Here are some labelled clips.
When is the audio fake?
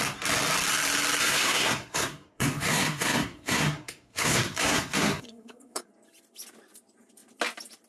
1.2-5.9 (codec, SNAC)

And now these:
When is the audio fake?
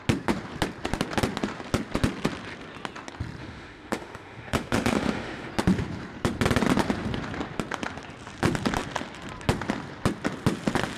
3.4-5.5 (autoencoder, DAC-VAE)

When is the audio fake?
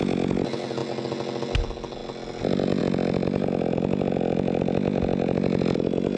none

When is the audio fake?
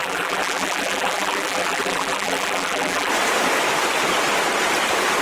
0.0-3.1 (vocoder, BigVGAN v2)